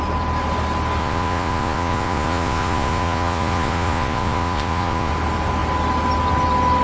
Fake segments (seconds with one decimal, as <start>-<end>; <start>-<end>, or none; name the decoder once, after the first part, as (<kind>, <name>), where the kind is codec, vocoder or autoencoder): 1.0-5.1 (vocoder, Vocos)